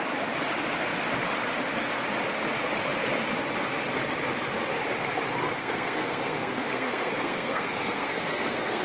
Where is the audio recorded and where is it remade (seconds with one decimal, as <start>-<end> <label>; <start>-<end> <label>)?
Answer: 0.0-5.4 recorded; 5.4-8.8 remade